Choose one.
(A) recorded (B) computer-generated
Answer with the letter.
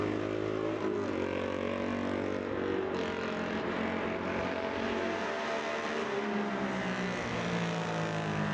A